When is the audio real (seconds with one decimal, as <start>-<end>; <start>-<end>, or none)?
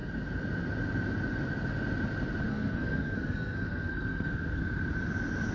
0.0-2.5; 4.6-5.5